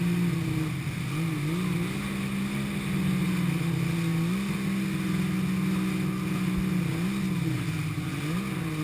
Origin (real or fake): real